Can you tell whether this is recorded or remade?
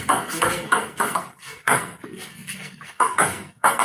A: remade